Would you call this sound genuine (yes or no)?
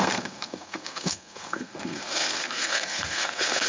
no